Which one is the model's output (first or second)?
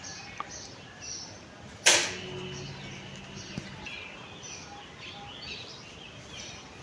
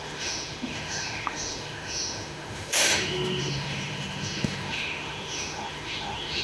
second